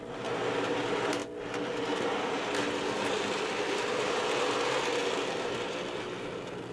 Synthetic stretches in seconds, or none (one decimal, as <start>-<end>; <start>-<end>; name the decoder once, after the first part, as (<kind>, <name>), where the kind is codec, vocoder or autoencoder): none